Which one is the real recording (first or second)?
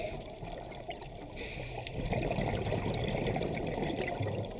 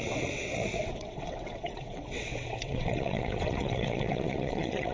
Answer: first